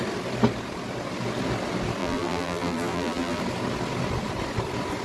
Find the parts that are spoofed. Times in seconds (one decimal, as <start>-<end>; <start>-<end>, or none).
2.0-3.4

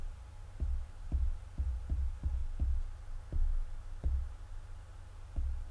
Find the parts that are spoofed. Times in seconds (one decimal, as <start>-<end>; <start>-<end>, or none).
0.0-2.4